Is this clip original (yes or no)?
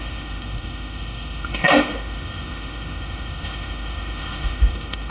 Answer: no